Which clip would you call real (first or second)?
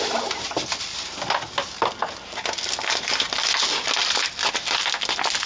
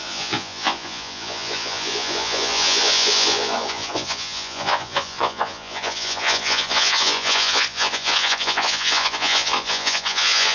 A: first